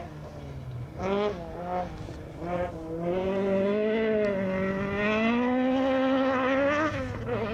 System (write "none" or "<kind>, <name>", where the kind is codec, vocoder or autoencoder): none